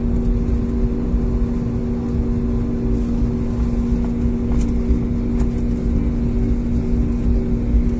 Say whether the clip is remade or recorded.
recorded